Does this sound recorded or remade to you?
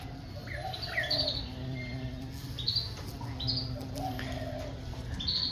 recorded